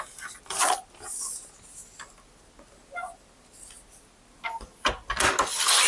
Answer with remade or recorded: recorded